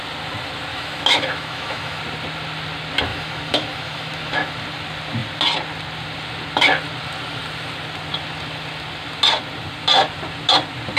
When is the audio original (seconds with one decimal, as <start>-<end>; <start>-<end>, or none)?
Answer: 0.0-0.7; 2.0-3.1; 4.5-11.0